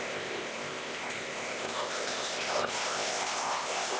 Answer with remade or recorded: remade